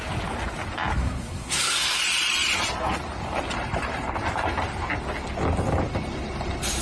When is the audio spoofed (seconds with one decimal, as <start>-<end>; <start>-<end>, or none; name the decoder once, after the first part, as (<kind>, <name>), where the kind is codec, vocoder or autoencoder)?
1.0-2.0 (codec, SNAC)